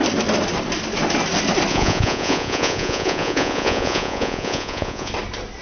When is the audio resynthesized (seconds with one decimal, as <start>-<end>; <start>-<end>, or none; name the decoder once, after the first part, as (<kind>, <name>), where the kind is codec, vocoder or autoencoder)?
1.7-5.1 (vocoder, Vocos)